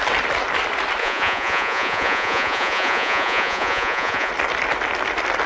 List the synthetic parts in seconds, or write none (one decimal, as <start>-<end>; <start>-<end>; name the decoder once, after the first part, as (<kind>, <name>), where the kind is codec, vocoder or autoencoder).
1.0-4.3 (vocoder, Vocos)